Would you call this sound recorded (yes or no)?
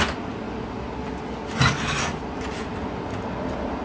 yes